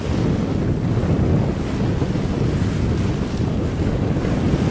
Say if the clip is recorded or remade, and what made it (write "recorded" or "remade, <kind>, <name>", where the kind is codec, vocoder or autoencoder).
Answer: recorded